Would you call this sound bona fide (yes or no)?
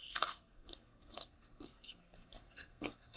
no